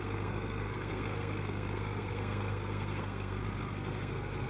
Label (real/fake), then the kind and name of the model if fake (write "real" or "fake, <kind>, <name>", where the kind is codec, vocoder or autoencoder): fake, codec, SNAC